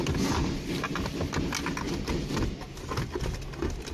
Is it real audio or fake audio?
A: real